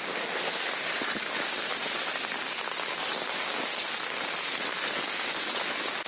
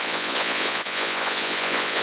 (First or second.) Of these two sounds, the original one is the first